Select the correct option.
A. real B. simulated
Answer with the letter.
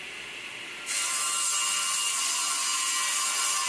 A